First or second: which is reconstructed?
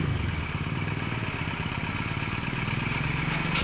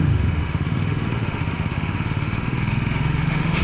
second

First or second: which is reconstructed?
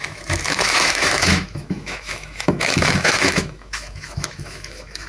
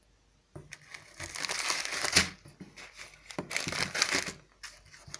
first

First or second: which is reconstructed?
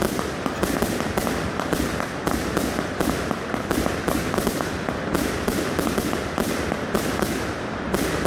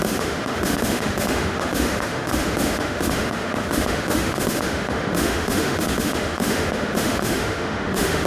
second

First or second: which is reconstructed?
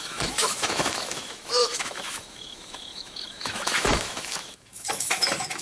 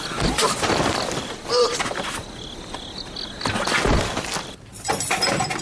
first